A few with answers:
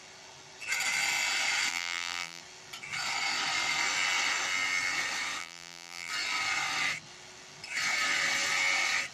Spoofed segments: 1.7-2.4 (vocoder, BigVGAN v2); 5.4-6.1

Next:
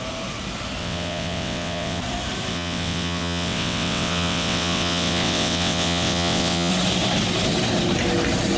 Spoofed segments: 0.8-2.0 (vocoder, WaveNeXt); 2.5-6.7

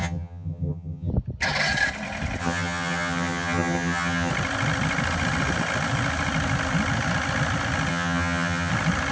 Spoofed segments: 0.0-1.1 (vocoder, HiFi-GAN); 2.4-4.3; 7.9-8.7

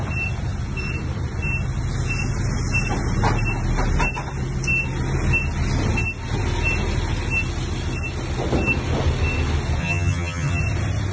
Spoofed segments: 9.8-10.6 (vocoder, HiFi-GAN)

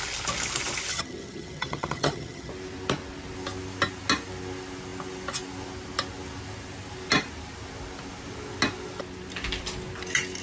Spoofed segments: 0.9-2.5 (vocoder, HiFi-GAN)